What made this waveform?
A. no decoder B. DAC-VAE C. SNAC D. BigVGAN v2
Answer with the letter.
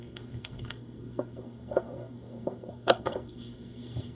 C